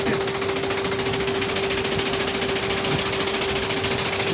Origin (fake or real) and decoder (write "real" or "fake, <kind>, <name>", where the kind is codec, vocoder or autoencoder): real